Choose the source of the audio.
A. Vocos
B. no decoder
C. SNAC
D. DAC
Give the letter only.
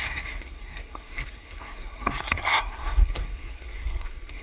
C